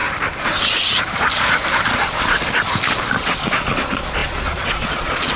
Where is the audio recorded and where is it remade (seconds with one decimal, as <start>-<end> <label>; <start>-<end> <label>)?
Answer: 0.0-3.2 recorded; 3.2-5.4 remade